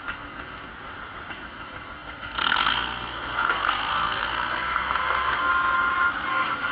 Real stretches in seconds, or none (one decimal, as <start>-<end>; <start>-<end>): 0.7-1.3; 5.5-6.3